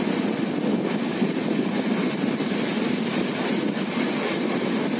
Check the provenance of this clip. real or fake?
real